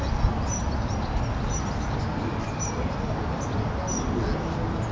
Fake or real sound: real